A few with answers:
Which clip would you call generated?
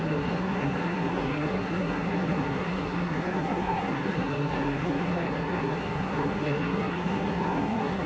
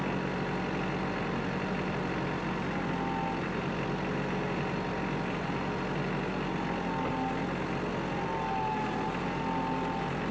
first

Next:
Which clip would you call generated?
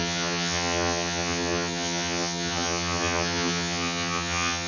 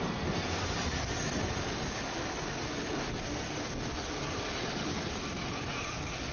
first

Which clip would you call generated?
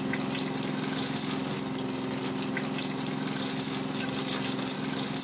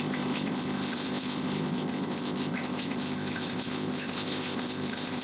second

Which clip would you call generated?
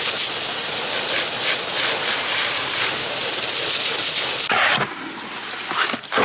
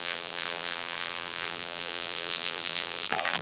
second